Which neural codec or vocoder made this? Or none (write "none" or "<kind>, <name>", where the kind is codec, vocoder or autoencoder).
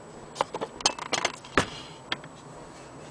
none